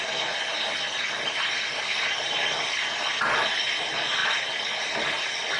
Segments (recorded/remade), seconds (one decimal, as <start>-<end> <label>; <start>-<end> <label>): 0.0-5.6 recorded